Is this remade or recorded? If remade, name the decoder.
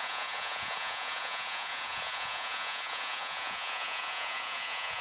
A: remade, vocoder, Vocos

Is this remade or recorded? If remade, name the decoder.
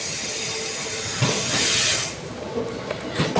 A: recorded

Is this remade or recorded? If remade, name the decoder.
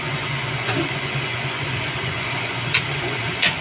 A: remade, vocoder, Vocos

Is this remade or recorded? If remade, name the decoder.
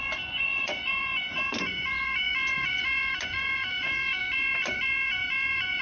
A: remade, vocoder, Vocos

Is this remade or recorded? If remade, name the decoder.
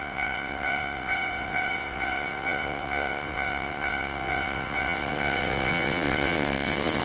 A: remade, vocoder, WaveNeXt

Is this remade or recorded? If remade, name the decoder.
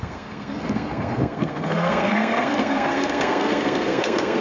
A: remade, codec, SNAC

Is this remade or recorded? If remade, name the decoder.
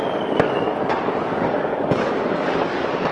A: remade, codec, DAC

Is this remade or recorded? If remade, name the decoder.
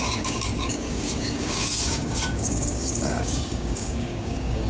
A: remade, codec, DAC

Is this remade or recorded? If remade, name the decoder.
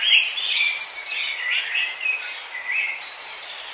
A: remade, vocoder, BigVGAN v2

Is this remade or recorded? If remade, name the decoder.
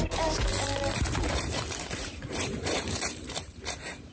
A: remade, vocoder, BigVGAN v2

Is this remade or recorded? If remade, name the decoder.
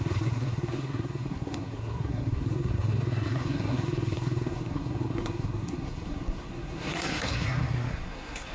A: remade, codec, SNAC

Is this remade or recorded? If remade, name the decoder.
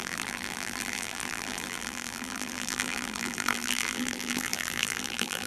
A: remade, vocoder, BigVGAN v2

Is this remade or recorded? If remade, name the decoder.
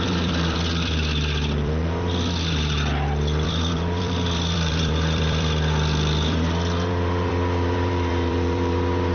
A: remade, vocoder, BigVGAN v2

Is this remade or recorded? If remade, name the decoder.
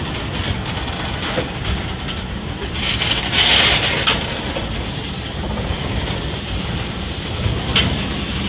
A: recorded